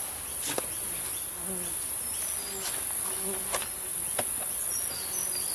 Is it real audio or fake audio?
real